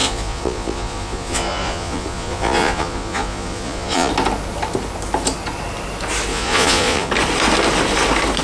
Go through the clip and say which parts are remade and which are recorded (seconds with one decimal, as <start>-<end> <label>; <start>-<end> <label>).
0.0-4.1 remade; 4.1-6.3 recorded; 6.3-7.1 remade; 7.1-8.4 recorded